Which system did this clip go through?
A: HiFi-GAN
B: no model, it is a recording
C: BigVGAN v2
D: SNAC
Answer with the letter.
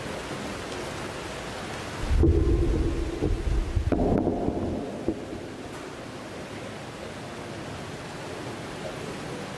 B